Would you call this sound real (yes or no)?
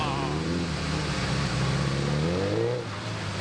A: yes